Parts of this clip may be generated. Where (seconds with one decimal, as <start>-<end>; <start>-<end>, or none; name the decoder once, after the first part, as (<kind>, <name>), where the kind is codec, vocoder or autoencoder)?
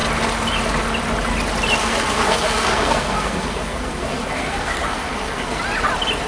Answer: 1.8-5.6 (codec, SNAC)